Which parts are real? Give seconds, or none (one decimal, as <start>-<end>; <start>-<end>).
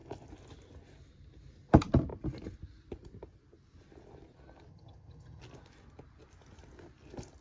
0.0-4.7; 5.4-7.4